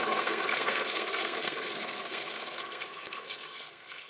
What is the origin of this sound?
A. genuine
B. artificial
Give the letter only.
B